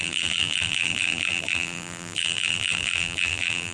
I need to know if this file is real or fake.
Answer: fake